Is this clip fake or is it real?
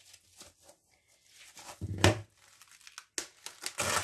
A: real